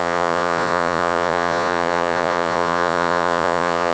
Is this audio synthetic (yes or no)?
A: yes